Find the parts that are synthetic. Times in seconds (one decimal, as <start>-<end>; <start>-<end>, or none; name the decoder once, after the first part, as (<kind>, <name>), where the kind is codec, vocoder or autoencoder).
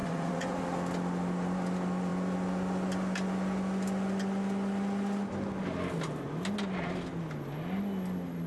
0.0-0.6 (vocoder, Vocos)